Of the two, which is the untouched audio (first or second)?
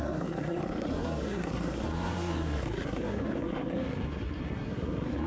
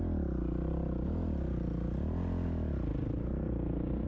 second